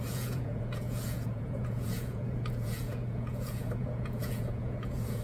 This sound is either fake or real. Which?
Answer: fake